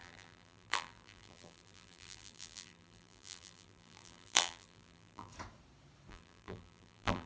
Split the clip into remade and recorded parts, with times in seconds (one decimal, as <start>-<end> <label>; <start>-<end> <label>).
0.0-5.3 remade; 5.3-6.1 recorded; 6.1-7.3 remade